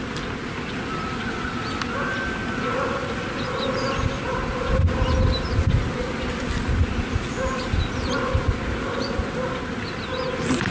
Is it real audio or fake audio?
real